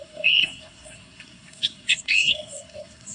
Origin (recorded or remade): remade